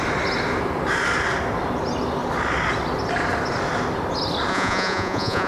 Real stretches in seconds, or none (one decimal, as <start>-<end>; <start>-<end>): 0.0-4.5